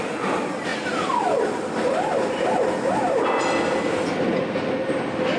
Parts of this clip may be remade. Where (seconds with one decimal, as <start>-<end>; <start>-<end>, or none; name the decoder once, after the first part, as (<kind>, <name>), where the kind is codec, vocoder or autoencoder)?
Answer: none